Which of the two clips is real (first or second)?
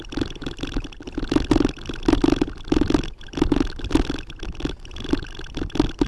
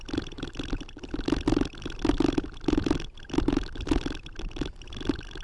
first